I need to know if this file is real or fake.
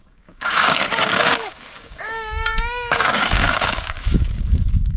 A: fake